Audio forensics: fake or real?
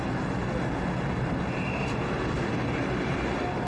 real